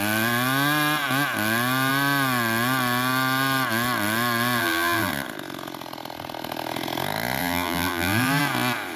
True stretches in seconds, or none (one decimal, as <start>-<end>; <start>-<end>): 0.0-4.6; 5.1-7.4; 8.4-9.0